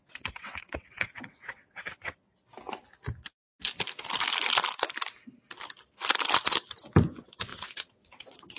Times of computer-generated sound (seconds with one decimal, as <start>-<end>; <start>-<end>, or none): 0.0-2.3; 7.5-8.6